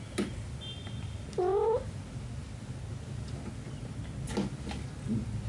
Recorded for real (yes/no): yes